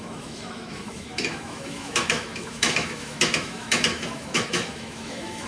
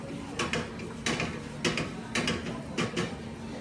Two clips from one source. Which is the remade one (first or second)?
first